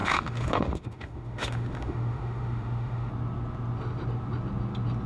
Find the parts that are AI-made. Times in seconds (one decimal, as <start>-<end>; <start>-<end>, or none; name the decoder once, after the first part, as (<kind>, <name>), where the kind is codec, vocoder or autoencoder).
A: 0.0-3.1 (autoencoder, DAC-VAE)